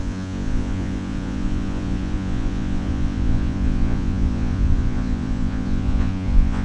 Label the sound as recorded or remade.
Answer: remade